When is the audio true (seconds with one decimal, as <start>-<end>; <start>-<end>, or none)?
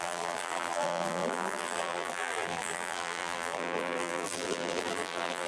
none